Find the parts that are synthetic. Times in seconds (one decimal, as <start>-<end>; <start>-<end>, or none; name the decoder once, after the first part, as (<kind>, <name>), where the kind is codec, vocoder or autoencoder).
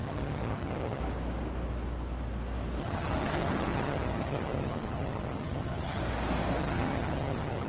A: 0.0-1.0 (vocoder, HiFi-GAN); 2.8-6.0; 6.6-7.7